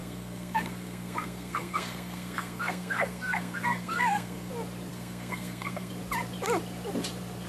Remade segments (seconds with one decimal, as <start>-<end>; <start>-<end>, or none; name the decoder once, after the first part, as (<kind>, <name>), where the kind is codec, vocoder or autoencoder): 0.0-4.5 (codec, SNAC); 4.9-5.9